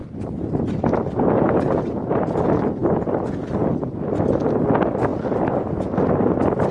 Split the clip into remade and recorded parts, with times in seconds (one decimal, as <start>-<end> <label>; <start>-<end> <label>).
0.0-6.7 recorded